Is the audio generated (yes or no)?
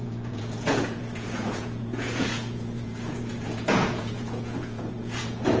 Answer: yes